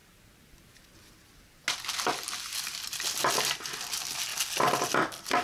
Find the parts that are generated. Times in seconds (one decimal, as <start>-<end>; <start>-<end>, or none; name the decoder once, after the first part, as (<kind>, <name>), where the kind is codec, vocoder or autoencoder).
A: none